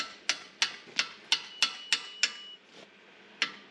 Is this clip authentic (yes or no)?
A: yes